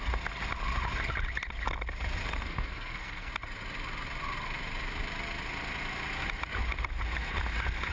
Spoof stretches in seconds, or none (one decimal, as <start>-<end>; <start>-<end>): 2.2-3.3